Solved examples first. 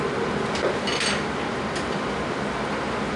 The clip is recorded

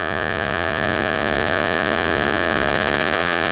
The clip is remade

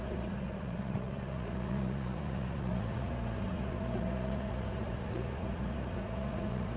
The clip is remade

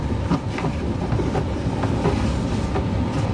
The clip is recorded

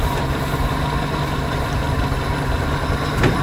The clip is recorded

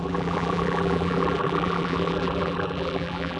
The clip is remade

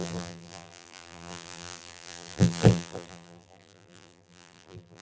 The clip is remade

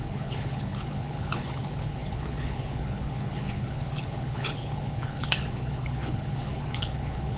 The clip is remade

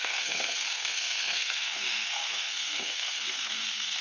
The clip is remade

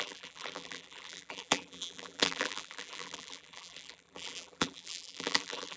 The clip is remade